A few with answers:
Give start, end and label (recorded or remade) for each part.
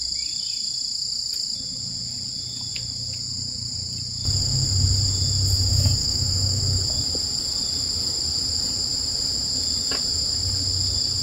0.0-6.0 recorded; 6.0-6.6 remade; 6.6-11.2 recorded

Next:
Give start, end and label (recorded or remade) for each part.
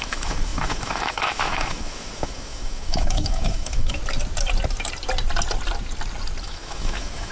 0.0-4.0 remade; 4.0-6.4 recorded; 6.4-7.3 remade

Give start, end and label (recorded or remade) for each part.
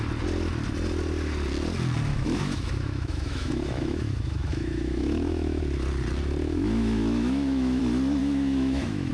0.0-2.1 recorded; 2.1-5.6 remade; 5.6-6.4 recorded; 6.4-7.8 remade; 7.8-8.2 recorded; 8.2-9.1 remade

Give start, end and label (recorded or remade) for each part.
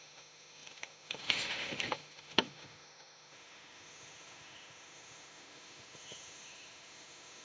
0.0-7.4 remade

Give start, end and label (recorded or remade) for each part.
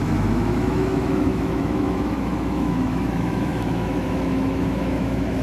0.0-5.4 remade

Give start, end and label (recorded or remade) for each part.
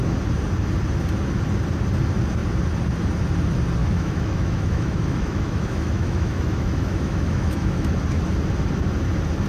0.0-3.8 recorded; 3.8-7.9 remade; 7.9-9.5 recorded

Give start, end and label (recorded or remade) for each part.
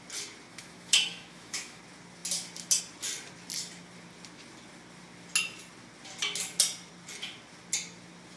0.0-0.5 recorded; 0.5-1.8 remade; 1.8-8.4 recorded